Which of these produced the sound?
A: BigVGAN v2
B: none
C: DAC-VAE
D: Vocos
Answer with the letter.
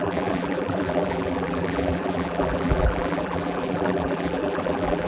A